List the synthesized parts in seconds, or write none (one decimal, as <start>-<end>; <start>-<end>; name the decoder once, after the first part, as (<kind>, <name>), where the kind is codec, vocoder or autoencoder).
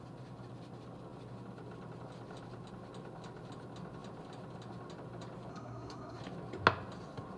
5.5-6.2 (codec, SNAC)